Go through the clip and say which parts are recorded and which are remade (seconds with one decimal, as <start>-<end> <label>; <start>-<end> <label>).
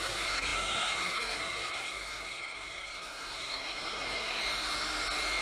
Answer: 0.0-4.4 remade; 4.4-5.4 recorded